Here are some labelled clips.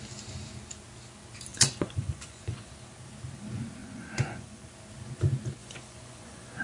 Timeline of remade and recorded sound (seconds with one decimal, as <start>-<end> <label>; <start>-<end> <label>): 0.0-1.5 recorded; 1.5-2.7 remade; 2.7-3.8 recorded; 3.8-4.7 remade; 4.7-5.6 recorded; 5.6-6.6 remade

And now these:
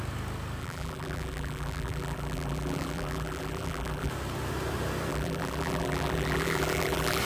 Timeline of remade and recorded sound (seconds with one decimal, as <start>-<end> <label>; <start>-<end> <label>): 0.0-0.6 recorded; 0.6-4.1 remade; 4.1-5.1 recorded; 5.1-7.2 remade

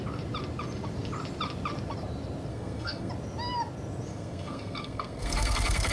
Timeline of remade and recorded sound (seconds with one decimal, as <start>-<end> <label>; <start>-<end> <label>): 0.0-2.5 recorded; 2.5-3.1 remade; 3.1-4.1 recorded; 4.1-5.9 remade